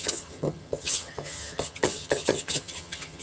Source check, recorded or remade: remade